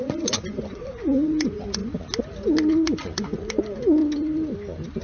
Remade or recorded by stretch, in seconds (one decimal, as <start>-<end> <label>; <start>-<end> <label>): 0.0-1.8 remade; 1.8-2.7 recorded; 2.7-4.0 remade; 4.0-5.0 recorded